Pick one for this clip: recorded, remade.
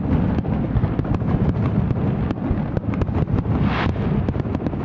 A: recorded